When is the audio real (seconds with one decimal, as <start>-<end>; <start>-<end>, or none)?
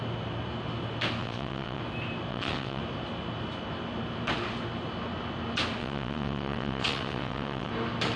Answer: 0.0-1.2; 1.8-2.3; 2.8-5.8; 7.7-8.2